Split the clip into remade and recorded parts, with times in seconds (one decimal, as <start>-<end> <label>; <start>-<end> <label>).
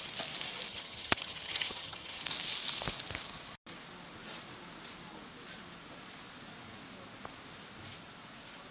0.0-0.7 recorded; 0.7-2.2 remade; 2.2-8.7 recorded